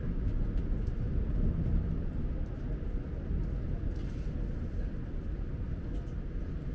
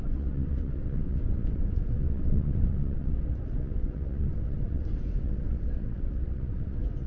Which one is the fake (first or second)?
second